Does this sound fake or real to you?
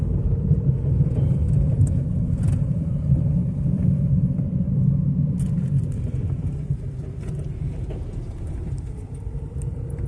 fake